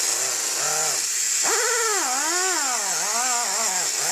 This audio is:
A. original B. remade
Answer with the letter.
A